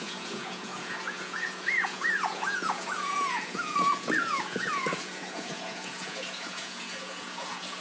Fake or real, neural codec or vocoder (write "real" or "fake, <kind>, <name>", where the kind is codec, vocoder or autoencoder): fake, vocoder, Vocos